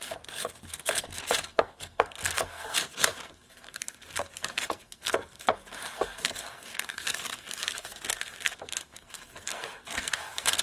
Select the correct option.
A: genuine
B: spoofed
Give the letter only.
B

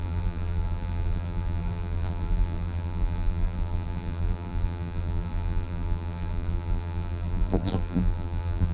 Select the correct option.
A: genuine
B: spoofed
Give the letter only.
B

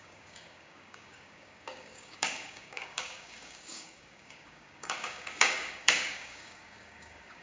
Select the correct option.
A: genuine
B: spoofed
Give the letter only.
B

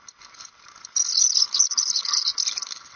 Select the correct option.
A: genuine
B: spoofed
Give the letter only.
A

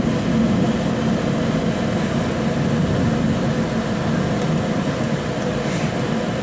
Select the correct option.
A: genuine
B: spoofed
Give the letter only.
A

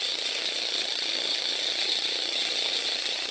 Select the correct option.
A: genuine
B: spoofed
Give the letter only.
B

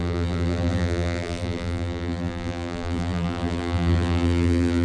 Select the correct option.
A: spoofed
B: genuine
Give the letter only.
A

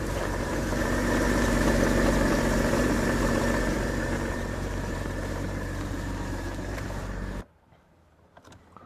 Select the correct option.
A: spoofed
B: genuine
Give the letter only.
A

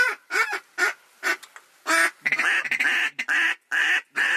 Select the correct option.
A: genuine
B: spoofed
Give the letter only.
A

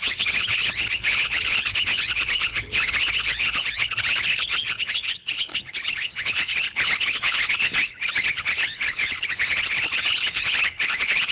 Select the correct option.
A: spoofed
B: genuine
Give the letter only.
A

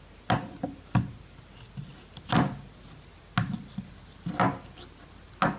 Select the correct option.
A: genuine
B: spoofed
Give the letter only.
A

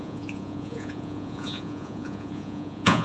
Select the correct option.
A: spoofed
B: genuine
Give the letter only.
A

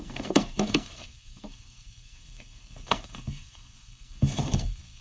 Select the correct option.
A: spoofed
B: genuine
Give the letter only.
A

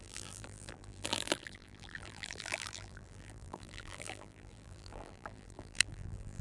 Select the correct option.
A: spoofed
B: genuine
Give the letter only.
A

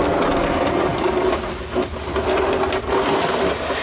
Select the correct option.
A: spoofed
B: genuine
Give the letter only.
B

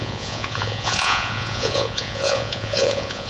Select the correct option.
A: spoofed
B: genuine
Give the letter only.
A